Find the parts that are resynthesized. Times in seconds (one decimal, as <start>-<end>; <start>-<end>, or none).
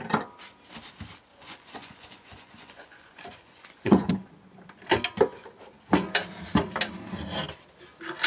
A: 1.3-4.1